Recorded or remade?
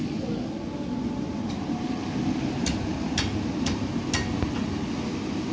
recorded